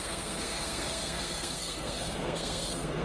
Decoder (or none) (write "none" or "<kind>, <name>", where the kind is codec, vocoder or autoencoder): codec, SNAC